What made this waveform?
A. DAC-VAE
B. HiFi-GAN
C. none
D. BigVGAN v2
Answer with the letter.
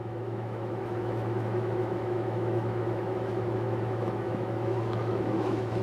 A